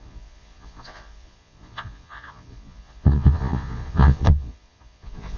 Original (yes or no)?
no